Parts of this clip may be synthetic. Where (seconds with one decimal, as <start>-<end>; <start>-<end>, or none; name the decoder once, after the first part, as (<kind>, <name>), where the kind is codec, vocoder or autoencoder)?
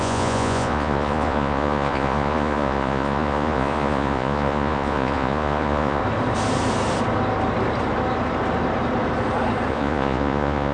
0.0-6.0 (vocoder, Vocos); 9.7-10.7